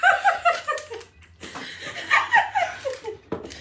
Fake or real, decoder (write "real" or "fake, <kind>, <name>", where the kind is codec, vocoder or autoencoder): real